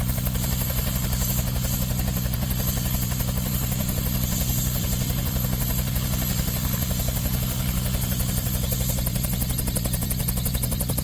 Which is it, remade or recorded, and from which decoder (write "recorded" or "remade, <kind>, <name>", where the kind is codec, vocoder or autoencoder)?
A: remade, vocoder, BigVGAN v2